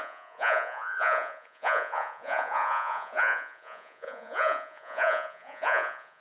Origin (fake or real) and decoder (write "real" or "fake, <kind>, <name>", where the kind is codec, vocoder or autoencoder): fake, vocoder, Vocos